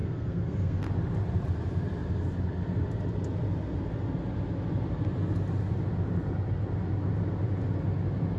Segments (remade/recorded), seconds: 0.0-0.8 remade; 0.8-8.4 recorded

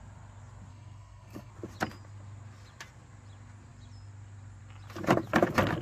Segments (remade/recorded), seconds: 0.0-0.7 recorded; 0.7-1.5 remade; 1.5-5.8 recorded

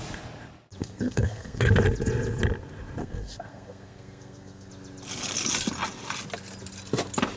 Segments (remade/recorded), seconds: 0.0-0.8 recorded; 0.8-1.7 remade; 1.7-3.0 recorded; 3.0-4.7 remade; 4.7-7.4 recorded

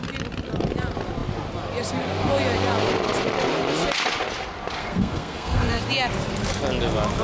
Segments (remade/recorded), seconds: 0.0-4.8 recorded; 4.8-5.8 remade; 5.8-7.2 recorded